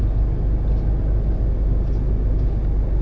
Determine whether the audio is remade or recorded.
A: recorded